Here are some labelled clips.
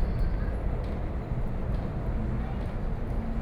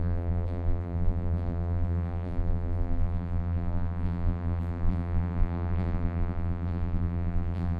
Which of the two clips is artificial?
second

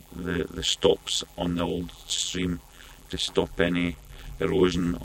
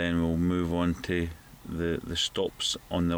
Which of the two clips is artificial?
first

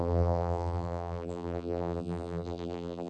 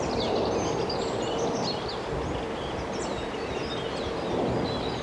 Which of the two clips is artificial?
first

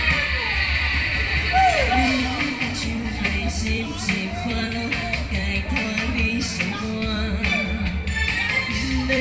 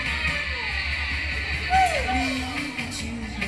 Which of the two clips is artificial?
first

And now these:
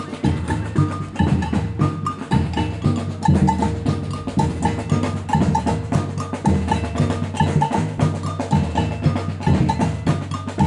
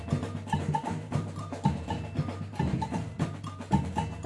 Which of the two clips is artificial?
second